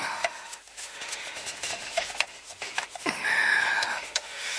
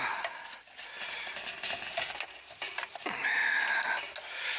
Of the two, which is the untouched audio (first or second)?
second